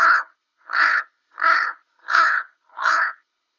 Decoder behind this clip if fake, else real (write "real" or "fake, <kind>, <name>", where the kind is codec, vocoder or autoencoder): fake, codec, HILCodec